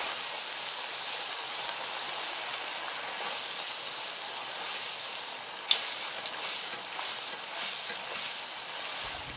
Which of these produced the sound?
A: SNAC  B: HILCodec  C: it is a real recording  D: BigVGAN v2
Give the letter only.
C